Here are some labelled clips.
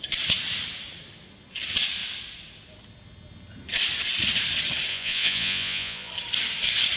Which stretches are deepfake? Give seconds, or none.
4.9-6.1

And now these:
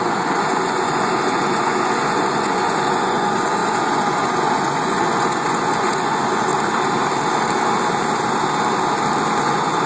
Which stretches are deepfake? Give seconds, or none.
0.0-6.5; 9.4-9.9